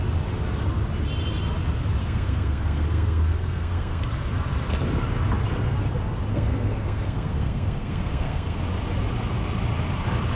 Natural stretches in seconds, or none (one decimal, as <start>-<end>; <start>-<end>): 0.0-2.0; 4.0-6.3; 8.6-10.4